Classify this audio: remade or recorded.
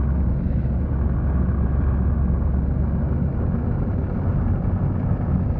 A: recorded